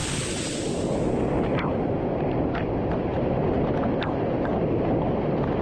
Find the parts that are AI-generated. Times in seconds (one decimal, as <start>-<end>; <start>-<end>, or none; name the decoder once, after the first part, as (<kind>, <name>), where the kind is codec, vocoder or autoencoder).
none

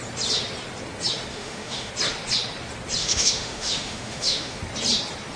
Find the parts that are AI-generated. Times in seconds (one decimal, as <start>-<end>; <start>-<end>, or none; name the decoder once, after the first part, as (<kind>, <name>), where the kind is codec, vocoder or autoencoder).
1.3-1.9 (autoencoder, DAC-VAE); 3.0-4.6

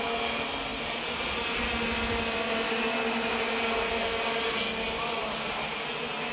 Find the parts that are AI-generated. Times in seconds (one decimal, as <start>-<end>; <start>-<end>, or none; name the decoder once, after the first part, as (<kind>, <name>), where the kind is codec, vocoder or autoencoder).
none

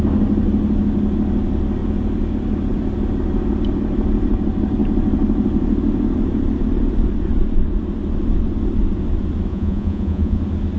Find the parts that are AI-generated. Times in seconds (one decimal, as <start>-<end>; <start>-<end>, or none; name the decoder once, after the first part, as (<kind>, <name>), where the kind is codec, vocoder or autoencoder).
9.5-10.4 (vocoder, Vocos)

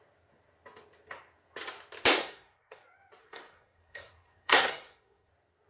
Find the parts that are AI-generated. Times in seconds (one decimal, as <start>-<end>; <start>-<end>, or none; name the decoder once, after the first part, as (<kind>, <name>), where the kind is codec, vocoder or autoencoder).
2.2-2.8 (codec, SNAC); 3.2-5.3

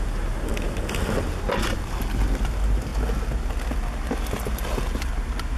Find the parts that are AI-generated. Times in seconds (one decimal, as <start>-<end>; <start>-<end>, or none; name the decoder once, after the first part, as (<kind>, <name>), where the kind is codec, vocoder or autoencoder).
none